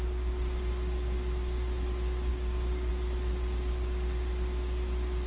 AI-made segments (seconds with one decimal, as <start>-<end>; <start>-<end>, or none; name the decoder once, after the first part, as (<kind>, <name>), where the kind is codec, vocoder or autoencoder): 2.3-2.9 (codec, DAC)